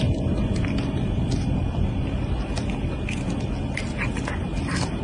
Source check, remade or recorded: recorded